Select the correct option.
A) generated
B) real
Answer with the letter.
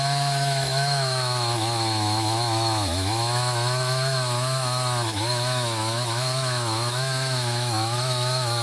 A